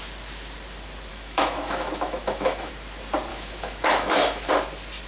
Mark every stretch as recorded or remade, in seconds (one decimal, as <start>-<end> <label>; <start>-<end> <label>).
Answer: 0.0-1.1 recorded; 1.1-2.7 remade; 2.7-3.3 recorded; 3.3-4.5 remade; 4.5-5.1 recorded